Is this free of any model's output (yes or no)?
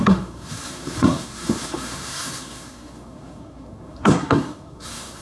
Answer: no